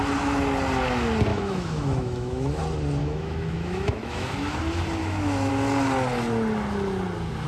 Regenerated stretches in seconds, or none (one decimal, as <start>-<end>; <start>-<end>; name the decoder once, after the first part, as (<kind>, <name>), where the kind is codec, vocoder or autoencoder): 1.3-2.6 (autoencoder, DAC-VAE); 3.0-4.6; 5.0-5.5